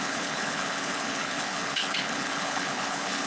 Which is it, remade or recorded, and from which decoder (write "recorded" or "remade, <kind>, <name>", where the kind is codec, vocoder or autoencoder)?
remade, codec, HILCodec